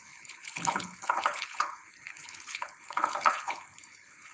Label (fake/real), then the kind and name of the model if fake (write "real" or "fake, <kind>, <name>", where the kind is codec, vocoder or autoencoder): fake, codec, HILCodec